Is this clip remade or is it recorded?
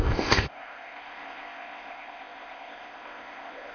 remade